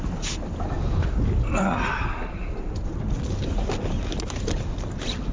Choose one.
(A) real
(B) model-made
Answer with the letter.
A